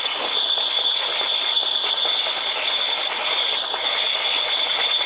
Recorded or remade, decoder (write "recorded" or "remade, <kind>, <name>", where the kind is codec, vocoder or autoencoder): recorded